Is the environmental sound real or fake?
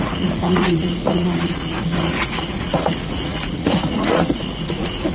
fake